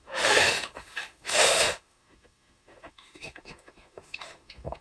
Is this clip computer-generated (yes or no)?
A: yes